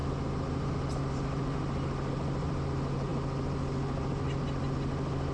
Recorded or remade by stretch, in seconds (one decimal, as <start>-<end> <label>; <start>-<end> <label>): 0.0-5.3 recorded